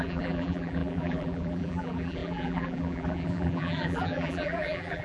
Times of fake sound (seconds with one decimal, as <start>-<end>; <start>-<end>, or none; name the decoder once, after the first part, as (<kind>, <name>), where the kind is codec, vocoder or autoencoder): 0.0-5.0 (vocoder, BigVGAN v2)